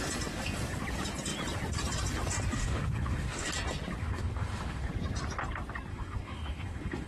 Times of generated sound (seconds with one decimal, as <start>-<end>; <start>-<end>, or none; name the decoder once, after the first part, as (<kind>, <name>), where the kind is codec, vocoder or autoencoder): 2.6-3.5 (autoencoder, DAC-VAE); 4.0-4.9; 5.9-7.1